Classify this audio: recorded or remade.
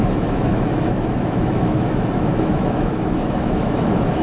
remade